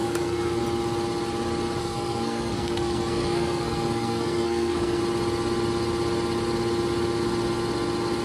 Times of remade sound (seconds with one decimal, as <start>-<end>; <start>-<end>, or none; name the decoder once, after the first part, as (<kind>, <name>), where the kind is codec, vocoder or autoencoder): 0.0-0.6 (codec, SNAC); 1.8-5.0